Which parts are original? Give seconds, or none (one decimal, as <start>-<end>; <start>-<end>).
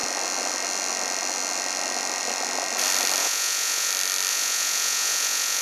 0.0-3.2; 3.9-4.3